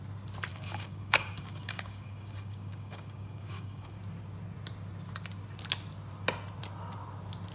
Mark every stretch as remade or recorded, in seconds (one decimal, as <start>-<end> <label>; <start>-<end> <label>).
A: 0.0-0.5 recorded; 0.5-4.0 remade; 4.0-7.5 recorded